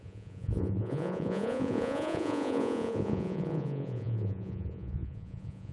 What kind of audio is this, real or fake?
fake